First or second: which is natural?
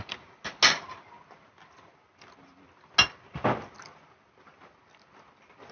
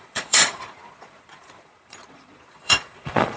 first